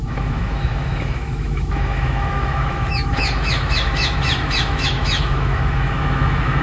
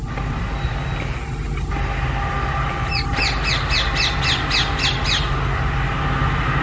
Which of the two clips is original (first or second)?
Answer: second